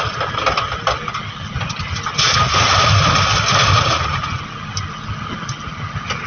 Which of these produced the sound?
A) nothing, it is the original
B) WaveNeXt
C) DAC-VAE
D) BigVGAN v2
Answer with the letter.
A